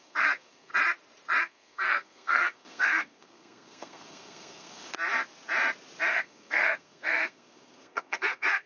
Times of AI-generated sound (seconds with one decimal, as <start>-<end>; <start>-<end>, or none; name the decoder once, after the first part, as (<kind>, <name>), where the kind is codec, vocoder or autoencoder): 0.0-0.7 (codec, SNAC); 1.4-4.9; 6.1-8.7